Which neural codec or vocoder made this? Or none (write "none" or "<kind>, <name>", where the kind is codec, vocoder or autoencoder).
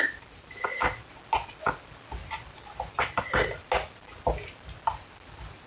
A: none